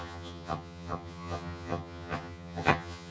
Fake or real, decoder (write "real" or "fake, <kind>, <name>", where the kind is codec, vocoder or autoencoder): fake, vocoder, HiFi-GAN